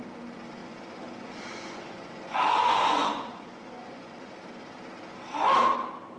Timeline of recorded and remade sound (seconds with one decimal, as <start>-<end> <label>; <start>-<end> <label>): 0.0-0.6 recorded; 0.6-4.3 remade; 4.3-6.2 recorded